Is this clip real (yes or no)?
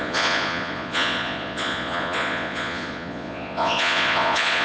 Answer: no